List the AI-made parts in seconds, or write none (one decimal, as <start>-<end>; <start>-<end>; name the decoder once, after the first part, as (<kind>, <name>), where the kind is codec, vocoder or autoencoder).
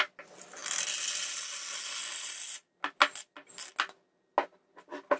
none